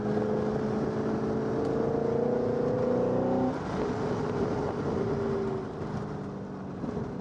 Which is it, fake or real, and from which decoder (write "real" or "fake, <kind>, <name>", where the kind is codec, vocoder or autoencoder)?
real